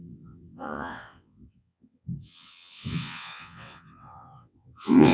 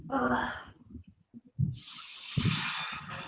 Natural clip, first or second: second